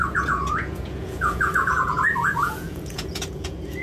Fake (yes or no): yes